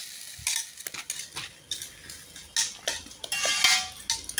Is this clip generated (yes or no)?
no